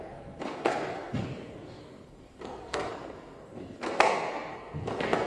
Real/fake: fake